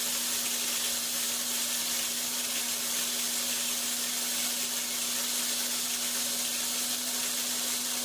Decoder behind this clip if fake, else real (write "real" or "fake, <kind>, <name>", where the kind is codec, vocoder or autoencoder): real